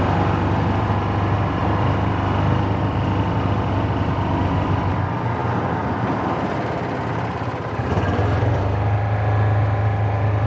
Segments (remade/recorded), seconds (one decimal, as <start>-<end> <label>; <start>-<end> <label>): 0.0-1.6 recorded; 1.6-2.1 remade; 2.1-5.4 recorded; 5.4-8.6 remade; 8.6-10.5 recorded